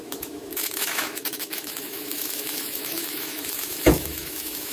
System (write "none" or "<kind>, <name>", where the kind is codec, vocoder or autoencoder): autoencoder, DAC-VAE